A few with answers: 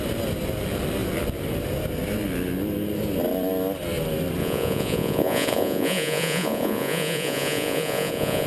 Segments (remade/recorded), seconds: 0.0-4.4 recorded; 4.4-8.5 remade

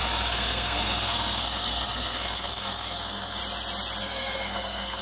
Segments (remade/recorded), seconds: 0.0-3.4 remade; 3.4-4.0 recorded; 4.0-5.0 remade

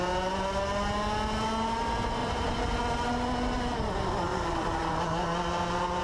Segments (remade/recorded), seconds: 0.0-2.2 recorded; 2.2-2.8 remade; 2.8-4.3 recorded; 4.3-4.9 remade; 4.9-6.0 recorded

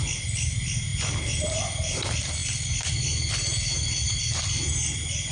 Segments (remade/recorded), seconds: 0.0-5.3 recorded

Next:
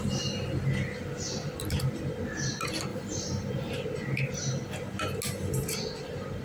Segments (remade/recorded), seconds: 0.0-2.9 recorded; 2.9-3.7 remade; 3.7-6.4 recorded

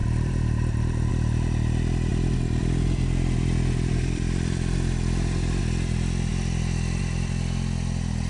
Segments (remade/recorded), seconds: 0.0-1.1 remade; 1.1-2.1 recorded; 2.1-5.6 remade; 5.6-8.3 recorded